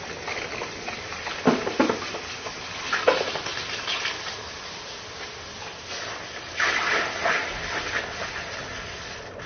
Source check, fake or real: real